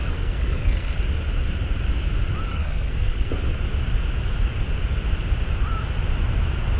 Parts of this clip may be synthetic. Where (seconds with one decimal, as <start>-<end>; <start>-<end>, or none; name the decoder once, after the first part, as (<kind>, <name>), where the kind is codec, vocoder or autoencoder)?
0.0-1.0 (codec, SNAC); 2.5-3.3